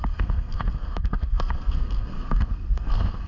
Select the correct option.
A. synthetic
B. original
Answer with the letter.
A